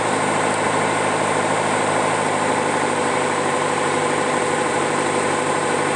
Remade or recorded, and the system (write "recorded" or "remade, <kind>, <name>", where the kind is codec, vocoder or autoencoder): remade, vocoder, BigVGAN v2